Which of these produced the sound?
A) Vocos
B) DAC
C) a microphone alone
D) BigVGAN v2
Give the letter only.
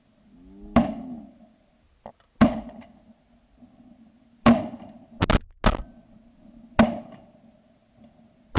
C